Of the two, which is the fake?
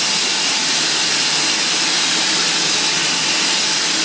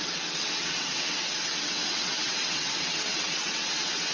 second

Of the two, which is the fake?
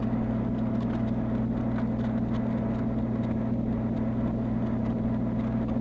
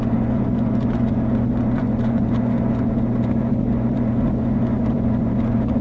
second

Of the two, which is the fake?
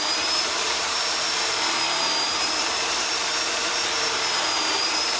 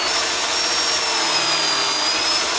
first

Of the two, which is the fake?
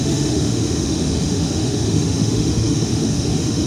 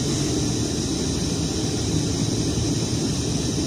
first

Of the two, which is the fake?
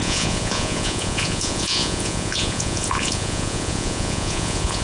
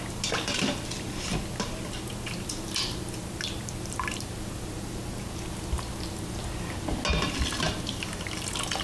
first